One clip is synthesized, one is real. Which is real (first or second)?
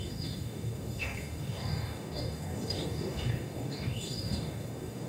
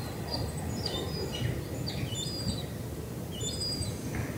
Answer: second